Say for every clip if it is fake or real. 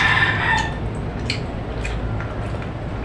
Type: real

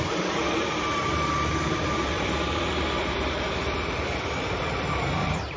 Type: fake